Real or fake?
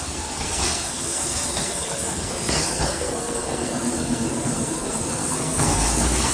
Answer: fake